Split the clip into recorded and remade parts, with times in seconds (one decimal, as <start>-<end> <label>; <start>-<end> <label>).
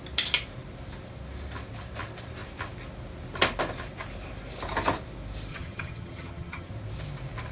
0.0-5.5 recorded; 5.5-6.7 remade; 6.7-7.5 recorded